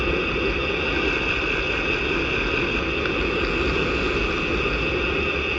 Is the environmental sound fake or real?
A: fake